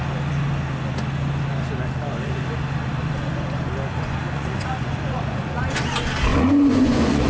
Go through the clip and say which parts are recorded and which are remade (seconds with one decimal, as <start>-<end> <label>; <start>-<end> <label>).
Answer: 0.0-3.9 recorded; 3.9-5.6 remade; 5.6-6.3 recorded; 6.3-7.3 remade